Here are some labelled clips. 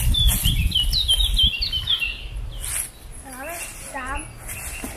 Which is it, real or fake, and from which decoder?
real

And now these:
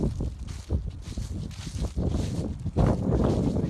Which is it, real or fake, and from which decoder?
real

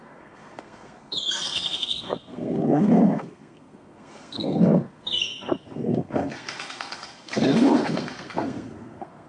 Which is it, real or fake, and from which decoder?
fake, codec, SNAC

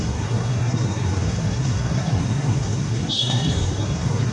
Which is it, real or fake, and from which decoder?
fake, codec, SNAC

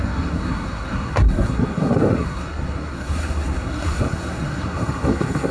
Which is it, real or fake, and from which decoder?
fake, codec, SNAC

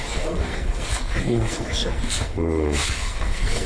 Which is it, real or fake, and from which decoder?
fake, codec, SNAC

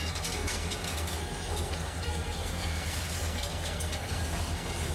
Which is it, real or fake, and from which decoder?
fake, codec, SNAC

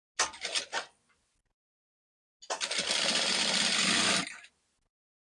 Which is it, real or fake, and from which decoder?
real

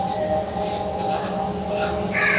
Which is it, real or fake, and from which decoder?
real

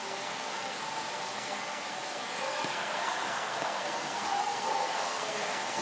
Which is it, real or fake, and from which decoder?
fake, codec, SNAC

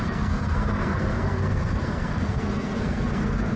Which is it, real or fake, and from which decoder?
fake, codec, SNAC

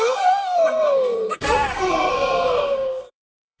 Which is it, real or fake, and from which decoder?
fake, codec, SNAC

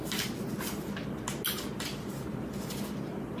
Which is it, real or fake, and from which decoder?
real